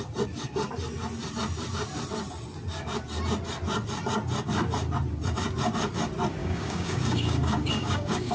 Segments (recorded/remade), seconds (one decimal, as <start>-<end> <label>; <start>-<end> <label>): 0.0-6.4 recorded; 6.4-8.3 remade